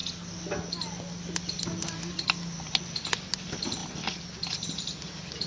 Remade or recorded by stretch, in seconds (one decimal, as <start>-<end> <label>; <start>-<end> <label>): 0.0-5.5 recorded